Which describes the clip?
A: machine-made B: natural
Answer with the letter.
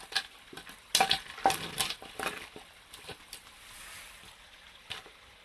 B